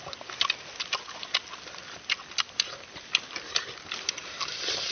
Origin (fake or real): real